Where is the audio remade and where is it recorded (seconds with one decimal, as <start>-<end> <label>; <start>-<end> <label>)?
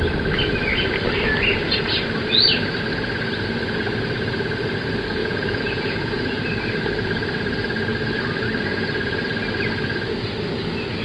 0.0-5.2 recorded; 5.2-6.4 remade; 6.4-11.0 recorded